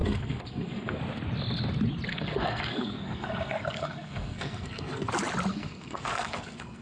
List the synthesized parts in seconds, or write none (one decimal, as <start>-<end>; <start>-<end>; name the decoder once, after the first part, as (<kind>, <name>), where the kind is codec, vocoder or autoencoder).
0.0-1.0 (codec, SNAC); 2.1-5.1; 5.5-6.8